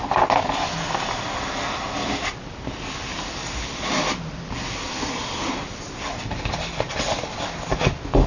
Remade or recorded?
recorded